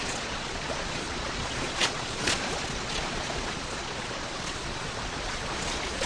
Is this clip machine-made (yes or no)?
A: yes